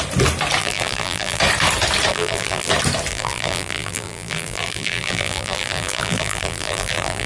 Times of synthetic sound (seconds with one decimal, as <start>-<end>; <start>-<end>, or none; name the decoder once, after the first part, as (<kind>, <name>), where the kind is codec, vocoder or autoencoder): 0.6-1.4 (vocoder, BigVGAN v2); 2.1-2.7; 3.1-7.3